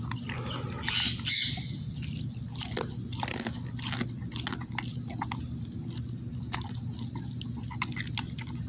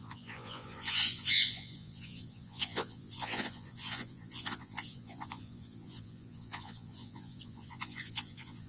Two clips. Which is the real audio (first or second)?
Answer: first